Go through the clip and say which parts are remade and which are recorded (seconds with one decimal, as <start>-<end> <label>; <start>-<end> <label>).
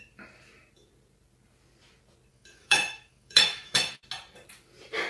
0.0-2.3 recorded; 2.3-4.0 remade; 4.0-5.1 recorded